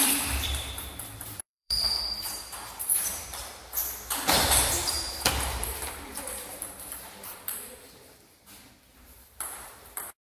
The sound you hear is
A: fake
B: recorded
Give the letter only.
A